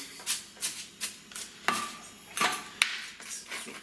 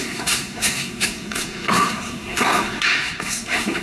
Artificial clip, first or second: second